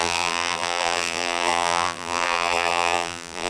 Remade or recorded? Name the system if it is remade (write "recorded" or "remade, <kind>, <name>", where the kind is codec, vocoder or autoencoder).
remade, vocoder, BigVGAN v2